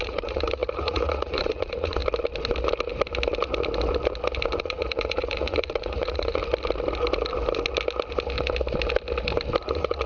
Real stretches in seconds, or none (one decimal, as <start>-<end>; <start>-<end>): 2.0-4.6; 6.4-9.7